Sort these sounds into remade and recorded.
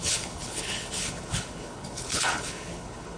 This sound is remade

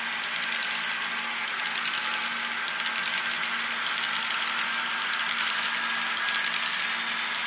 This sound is recorded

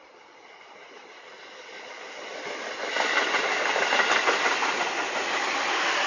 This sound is recorded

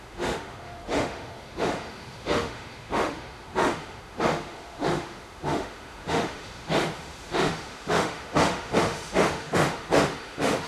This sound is remade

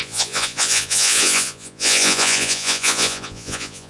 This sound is remade